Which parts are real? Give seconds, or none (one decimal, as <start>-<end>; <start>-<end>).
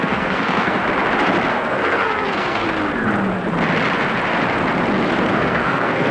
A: 0.8-1.5; 2.6-5.3